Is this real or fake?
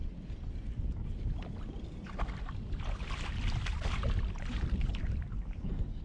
real